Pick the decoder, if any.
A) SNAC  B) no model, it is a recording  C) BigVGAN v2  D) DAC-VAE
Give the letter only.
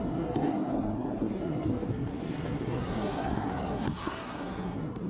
A